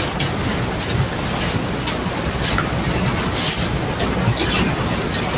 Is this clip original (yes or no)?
yes